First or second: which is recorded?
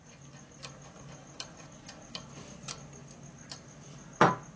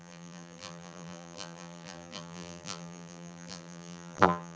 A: first